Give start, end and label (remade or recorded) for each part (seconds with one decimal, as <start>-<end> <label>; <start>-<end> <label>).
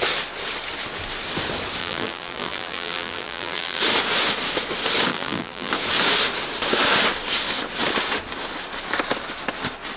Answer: 0.0-1.8 recorded; 1.8-3.8 remade; 3.8-5.1 recorded; 5.1-5.7 remade; 5.7-10.0 recorded